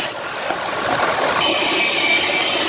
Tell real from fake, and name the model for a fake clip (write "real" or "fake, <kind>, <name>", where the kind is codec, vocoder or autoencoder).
real